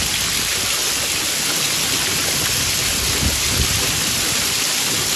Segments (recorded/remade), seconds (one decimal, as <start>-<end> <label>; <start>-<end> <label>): 0.0-5.2 recorded